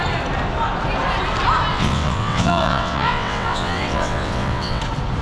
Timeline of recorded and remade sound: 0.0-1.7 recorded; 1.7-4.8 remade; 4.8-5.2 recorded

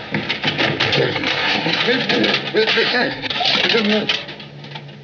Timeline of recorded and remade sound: 0.0-0.9 recorded; 0.9-1.8 remade; 1.8-2.7 recorded; 2.7-3.3 remade; 3.3-5.0 recorded

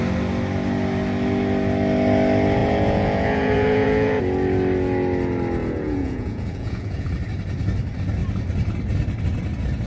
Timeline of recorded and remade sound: 0.0-2.6 recorded; 2.6-4.2 remade; 4.2-5.6 recorded; 5.6-7.1 remade; 7.1-9.9 recorded

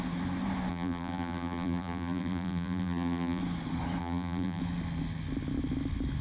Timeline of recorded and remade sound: 0.0-0.7 recorded; 0.7-3.4 remade; 3.4-4.0 recorded; 4.0-4.6 remade; 4.6-6.2 recorded